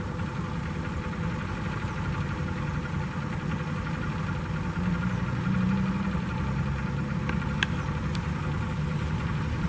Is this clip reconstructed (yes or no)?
no